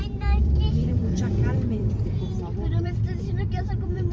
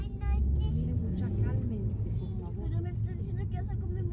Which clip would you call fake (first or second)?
first